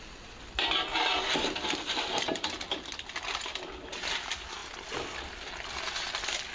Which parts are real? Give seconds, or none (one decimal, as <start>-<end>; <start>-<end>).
0.0-0.9; 2.4-6.5